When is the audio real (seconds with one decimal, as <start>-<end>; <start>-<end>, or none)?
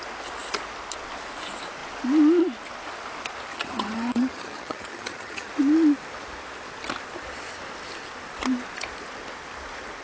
0.0-3.5; 5.5-10.0